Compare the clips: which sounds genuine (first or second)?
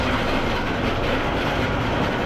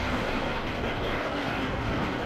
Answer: first